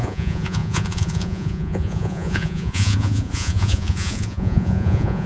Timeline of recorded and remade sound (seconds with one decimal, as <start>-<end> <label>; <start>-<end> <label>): 0.0-5.3 remade